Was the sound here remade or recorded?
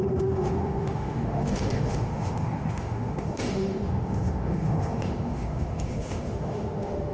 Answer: remade